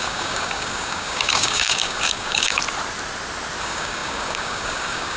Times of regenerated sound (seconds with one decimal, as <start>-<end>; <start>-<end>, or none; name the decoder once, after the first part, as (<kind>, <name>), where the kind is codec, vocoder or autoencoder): 0.0-2.6 (codec, DAC); 3.6-5.2